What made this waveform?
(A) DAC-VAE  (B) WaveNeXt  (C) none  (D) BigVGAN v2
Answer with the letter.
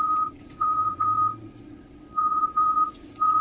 B